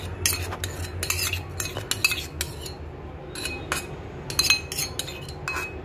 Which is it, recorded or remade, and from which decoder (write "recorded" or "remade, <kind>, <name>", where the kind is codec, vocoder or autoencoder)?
recorded